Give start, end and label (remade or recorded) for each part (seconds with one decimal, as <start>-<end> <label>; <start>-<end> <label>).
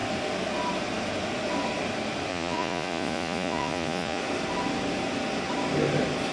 0.0-2.3 recorded; 2.3-4.2 remade; 4.2-6.3 recorded